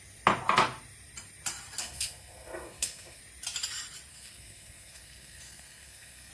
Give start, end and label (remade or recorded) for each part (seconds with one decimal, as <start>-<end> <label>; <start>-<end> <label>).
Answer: 0.0-1.8 recorded; 1.8-3.2 remade; 3.2-4.1 recorded; 4.1-6.3 remade